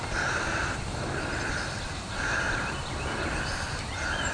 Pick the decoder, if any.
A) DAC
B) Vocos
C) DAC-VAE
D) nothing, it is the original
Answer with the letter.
D